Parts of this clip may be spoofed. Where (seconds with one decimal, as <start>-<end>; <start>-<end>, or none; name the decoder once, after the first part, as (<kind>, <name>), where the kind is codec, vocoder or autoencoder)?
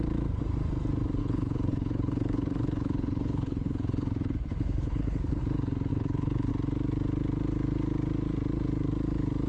1.2-5.4 (codec, HILCodec); 5.9-6.5